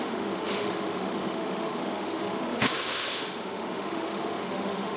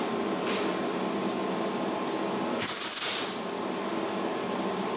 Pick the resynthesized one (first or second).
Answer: first